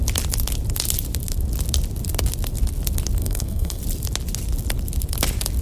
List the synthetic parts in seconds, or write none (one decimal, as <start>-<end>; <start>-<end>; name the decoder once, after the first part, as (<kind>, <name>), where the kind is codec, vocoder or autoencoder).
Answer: 3.2-3.8 (codec, SNAC)